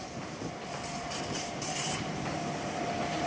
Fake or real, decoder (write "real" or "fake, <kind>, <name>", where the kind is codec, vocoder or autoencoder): real